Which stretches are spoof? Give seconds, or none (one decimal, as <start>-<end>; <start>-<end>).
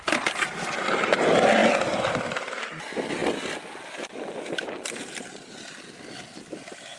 none